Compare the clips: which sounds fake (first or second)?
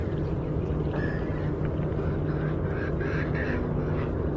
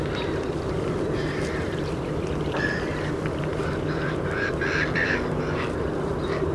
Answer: second